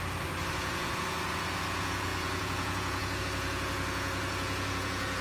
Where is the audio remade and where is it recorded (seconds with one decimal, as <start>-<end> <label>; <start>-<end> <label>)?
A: 0.0-0.5 recorded; 0.5-5.2 remade